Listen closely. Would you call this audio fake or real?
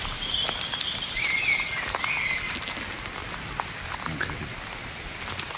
real